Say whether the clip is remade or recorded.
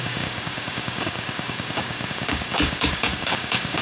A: remade